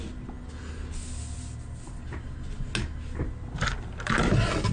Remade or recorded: recorded